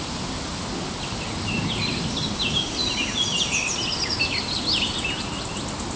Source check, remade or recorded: recorded